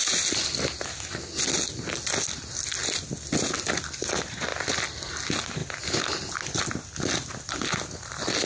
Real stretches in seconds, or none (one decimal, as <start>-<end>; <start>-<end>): 0.0-8.5

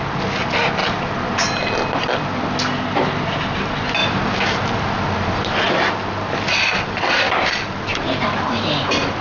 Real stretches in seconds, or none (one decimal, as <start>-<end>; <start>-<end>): 0.0-0.8; 3.4-4.0; 5.7-7.9; 8.5-9.2

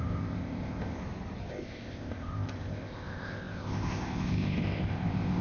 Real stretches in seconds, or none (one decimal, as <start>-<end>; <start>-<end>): 1.0-1.5

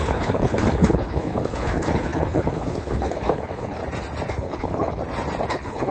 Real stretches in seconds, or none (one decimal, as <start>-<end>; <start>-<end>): 3.8-4.3; 5.0-5.5

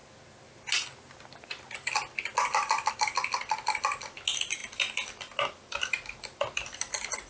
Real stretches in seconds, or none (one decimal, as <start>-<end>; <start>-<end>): 0.0-7.3

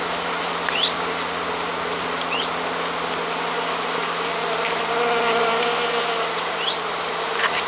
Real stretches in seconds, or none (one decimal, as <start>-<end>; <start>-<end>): 0.0-7.7

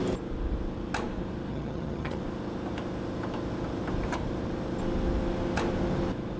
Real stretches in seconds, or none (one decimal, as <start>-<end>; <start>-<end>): 0.0-1.5; 2.2-6.4

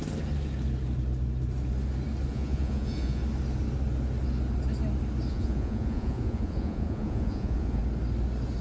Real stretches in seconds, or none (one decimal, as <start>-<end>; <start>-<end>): 0.0-2.3; 3.2-5.3; 7.8-8.6